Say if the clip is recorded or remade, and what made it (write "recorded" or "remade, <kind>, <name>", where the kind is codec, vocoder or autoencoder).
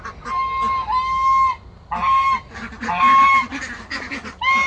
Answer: recorded